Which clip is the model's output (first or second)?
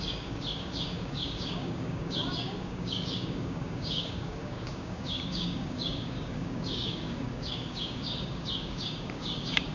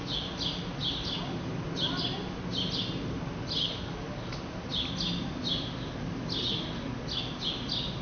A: first